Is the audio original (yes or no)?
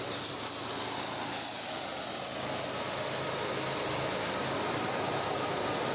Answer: yes